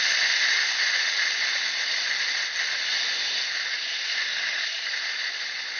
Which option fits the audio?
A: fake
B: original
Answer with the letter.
B